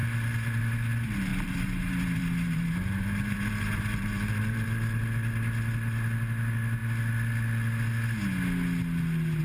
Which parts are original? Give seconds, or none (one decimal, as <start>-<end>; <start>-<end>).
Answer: 0.6-1.3; 5.0-9.4